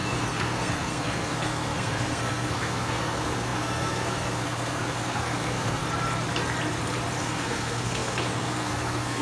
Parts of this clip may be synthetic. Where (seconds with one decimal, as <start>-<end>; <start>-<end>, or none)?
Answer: 0.0-5.8; 7.2-9.2